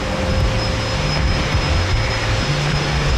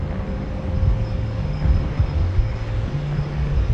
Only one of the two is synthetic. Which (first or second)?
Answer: second